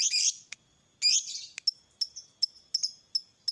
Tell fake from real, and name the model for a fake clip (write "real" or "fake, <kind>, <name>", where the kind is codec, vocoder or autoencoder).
real